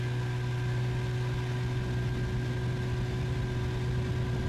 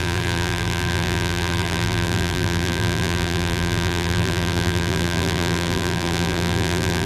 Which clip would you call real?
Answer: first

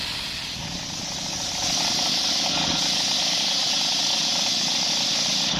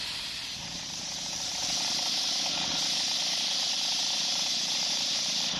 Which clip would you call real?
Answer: first